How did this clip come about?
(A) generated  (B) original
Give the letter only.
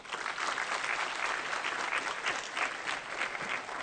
B